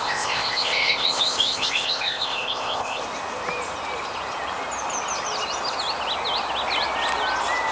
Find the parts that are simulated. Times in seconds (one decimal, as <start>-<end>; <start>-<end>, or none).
0.0-3.0